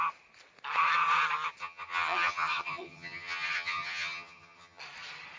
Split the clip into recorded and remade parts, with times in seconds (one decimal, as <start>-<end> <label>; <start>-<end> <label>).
0.0-1.6 recorded; 1.6-4.8 remade; 4.8-5.4 recorded